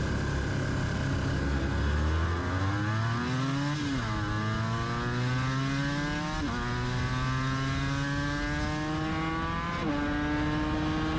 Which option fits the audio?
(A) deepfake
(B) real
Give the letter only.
B